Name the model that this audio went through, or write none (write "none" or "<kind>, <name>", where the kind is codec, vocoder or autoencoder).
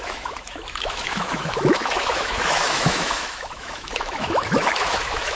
autoencoder, DAC-VAE